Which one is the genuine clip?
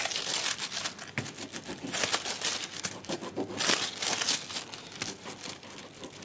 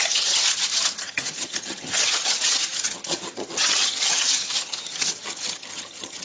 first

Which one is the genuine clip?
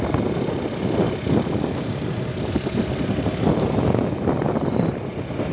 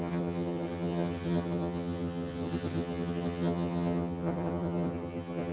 first